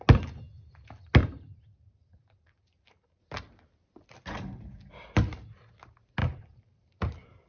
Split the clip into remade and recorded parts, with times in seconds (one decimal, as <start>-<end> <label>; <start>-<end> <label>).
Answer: 0.0-1.2 recorded; 1.2-3.2 remade; 3.2-6.2 recorded; 6.2-7.5 remade